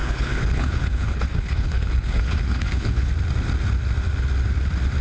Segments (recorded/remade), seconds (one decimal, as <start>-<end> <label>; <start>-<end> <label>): 0.0-3.1 remade; 3.1-5.0 recorded